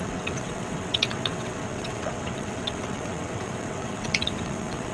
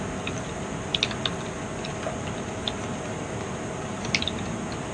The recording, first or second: second